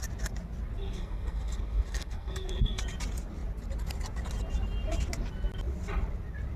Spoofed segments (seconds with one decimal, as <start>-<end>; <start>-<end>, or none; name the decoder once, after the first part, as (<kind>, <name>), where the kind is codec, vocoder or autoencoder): 0.8-2.8 (codec, SNAC)